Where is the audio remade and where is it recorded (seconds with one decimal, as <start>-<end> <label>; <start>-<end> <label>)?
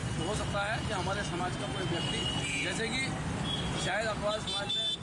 0.0-5.0 recorded